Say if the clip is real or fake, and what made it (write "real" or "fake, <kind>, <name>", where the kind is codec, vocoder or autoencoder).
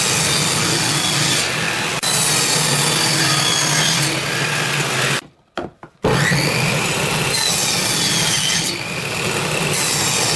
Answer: real